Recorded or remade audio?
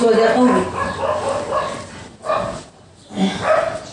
recorded